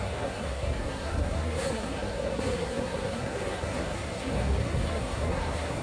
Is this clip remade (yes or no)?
yes